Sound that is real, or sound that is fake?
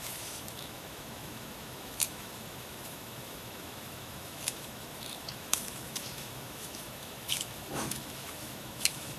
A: fake